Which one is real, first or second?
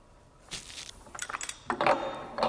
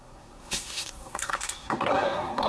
first